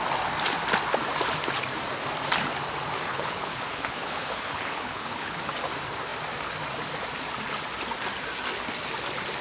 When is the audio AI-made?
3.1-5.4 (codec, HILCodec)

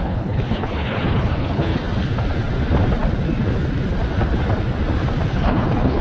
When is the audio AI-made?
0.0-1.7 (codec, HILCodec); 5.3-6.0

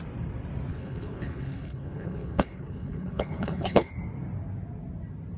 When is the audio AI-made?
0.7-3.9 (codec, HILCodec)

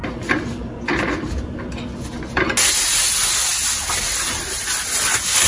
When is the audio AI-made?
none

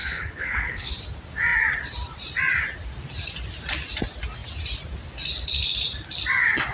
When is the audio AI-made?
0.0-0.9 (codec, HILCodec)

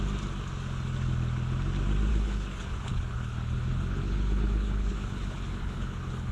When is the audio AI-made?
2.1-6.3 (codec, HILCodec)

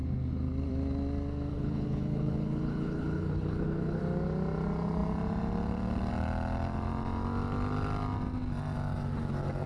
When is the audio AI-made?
1.5-4.0 (codec, HILCodec)